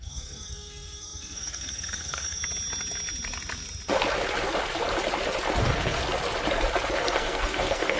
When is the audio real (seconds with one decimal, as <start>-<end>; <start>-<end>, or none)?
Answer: 2.4-5.6; 6.0-7.0